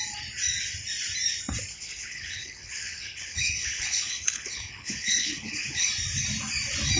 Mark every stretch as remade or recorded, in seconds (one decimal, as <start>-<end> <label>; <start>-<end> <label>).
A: 0.0-1.7 recorded; 1.7-5.9 remade; 5.9-7.0 recorded